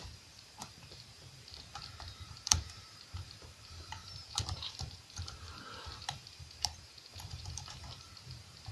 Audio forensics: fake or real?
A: fake